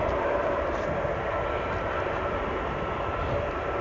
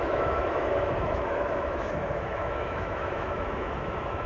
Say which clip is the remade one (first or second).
second